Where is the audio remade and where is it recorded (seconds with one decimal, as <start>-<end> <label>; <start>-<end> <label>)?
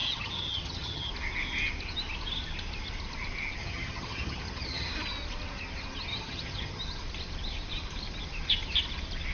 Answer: 0.0-1.1 remade; 1.1-3.6 recorded; 3.6-4.9 remade; 4.9-6.1 recorded; 6.1-6.8 remade; 6.8-9.3 recorded